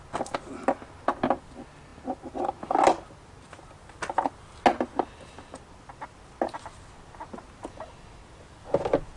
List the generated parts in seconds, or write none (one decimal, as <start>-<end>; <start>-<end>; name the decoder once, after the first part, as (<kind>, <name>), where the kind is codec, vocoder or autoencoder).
none